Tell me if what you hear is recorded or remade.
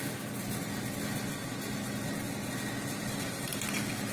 recorded